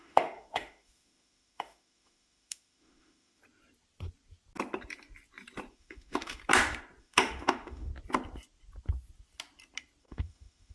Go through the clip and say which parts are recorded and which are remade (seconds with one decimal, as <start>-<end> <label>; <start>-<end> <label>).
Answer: 0.0-3.4 remade; 3.4-5.7 recorded; 5.7-6.4 remade; 6.4-7.0 recorded; 7.0-7.9 remade; 7.9-10.0 recorded; 10.0-10.7 remade